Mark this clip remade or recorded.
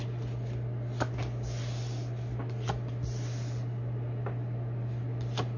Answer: recorded